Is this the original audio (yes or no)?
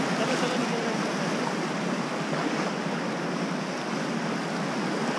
yes